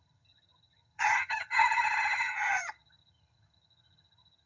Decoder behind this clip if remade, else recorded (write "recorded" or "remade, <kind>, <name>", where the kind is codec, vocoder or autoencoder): remade, vocoder, HiFi-GAN